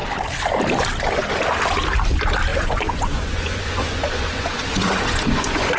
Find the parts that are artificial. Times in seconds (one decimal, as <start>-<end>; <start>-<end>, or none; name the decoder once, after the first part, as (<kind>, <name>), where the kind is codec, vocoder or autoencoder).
2.5-5.8 (vocoder, Vocos)